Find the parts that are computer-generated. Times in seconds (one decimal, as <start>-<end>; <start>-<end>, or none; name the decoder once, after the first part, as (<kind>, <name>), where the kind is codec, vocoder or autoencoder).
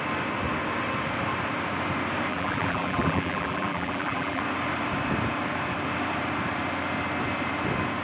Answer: 2.3-4.4 (vocoder, BigVGAN v2)